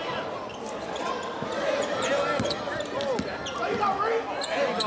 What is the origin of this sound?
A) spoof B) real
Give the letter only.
B